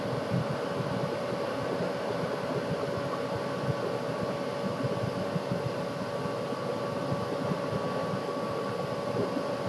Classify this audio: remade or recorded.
recorded